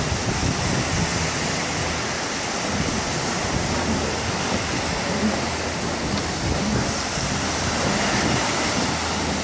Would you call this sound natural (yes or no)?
yes